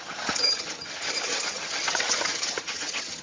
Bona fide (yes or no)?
no